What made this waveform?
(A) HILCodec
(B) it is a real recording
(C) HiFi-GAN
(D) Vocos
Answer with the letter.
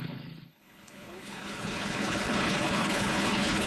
A